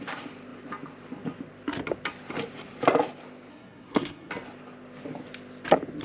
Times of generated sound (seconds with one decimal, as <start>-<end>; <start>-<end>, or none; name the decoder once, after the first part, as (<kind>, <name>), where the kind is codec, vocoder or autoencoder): 3.5-4.3 (codec, SNAC)